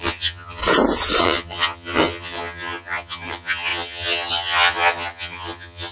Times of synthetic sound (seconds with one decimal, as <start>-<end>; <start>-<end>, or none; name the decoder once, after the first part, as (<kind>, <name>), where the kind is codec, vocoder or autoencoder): 0.0-0.6 (vocoder, HiFi-GAN); 1.2-5.9